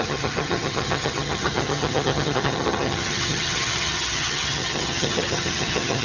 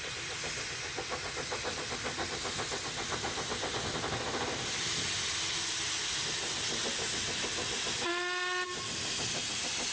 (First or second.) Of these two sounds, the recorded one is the second